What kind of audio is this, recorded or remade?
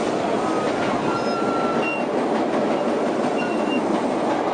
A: recorded